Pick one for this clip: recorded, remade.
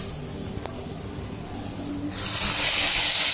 recorded